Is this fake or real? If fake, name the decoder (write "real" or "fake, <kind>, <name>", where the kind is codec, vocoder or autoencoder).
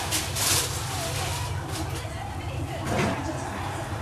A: real